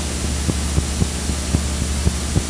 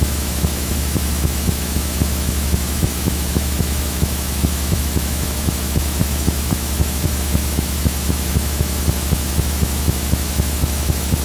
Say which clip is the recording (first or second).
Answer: first